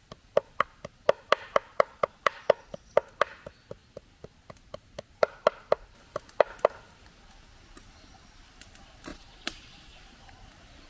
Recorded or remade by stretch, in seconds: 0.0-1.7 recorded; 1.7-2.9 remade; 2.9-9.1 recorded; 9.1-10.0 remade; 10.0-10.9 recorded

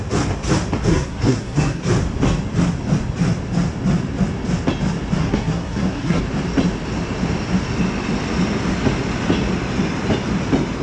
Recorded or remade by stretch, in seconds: 0.0-0.9 recorded; 0.9-1.8 remade; 1.8-5.2 recorded; 5.2-6.2 remade; 6.2-10.8 recorded

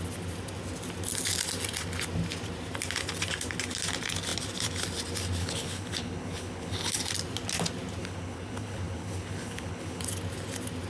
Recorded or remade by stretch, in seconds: 0.0-5.4 recorded; 5.4-7.0 remade; 7.0-8.0 recorded; 8.0-10.0 remade; 10.0-10.9 recorded

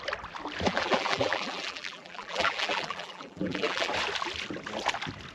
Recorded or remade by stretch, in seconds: 0.0-0.7 recorded; 0.7-3.9 remade; 3.9-5.3 recorded